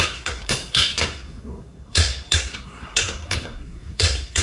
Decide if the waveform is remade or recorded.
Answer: remade